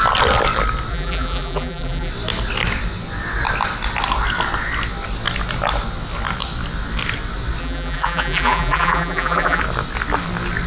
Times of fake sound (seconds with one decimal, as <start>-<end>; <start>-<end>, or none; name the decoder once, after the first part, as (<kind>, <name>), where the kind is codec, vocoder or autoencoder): 0.9-2.1 (vocoder, BigVGAN v2); 7.6-9.6